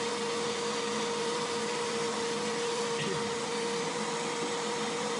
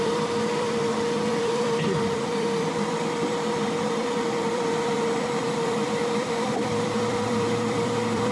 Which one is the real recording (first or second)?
first